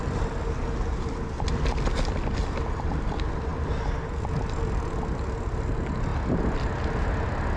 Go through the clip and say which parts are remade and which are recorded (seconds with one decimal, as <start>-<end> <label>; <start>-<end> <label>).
0.0-7.6 recorded